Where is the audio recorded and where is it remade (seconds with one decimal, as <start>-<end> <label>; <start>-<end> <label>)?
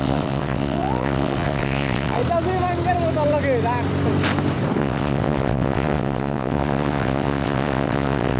0.0-2.2 remade; 2.2-4.8 recorded; 4.8-8.4 remade